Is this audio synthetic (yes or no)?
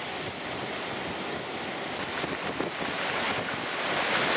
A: no